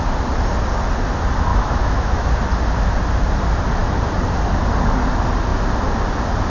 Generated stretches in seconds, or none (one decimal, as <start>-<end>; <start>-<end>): 1.5-2.3